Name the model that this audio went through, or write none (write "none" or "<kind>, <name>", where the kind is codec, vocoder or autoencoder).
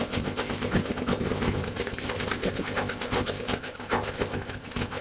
codec, ZipCodec